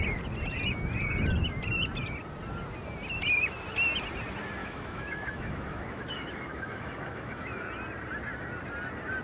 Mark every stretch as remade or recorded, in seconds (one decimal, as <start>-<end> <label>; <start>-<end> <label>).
0.0-4.6 recorded; 4.6-7.7 remade; 7.7-9.2 recorded

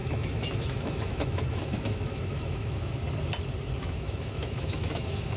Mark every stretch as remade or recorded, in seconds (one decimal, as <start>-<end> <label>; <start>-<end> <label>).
0.0-2.9 remade; 2.9-3.8 recorded; 3.8-5.4 remade

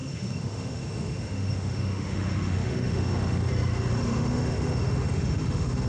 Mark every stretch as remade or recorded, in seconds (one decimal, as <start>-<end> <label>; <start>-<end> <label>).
0.0-3.5 remade; 3.5-4.1 recorded; 4.1-5.9 remade

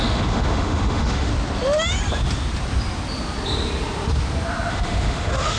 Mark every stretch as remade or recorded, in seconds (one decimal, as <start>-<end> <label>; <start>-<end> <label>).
0.0-1.3 remade; 1.3-4.7 recorded; 4.7-5.6 remade

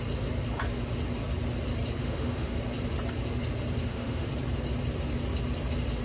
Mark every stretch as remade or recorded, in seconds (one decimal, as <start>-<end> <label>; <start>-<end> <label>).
0.0-2.0 recorded; 2.0-2.6 remade; 2.6-3.8 recorded; 3.8-4.3 remade; 4.3-6.0 recorded

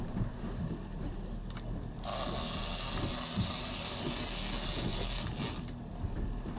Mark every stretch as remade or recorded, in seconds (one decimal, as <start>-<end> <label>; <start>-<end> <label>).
0.0-6.6 recorded

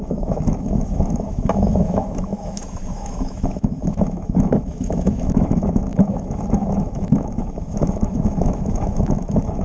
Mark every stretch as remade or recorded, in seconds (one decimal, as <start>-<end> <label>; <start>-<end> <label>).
0.0-9.6 remade

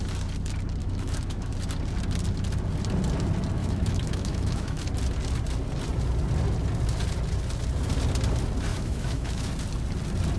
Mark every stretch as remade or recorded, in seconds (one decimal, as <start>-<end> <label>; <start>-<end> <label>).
0.0-0.8 recorded; 0.8-1.5 remade; 1.5-3.6 recorded; 3.6-4.9 remade; 4.9-8.7 recorded; 8.7-9.5 remade; 9.5-10.4 recorded